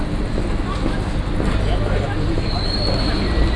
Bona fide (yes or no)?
yes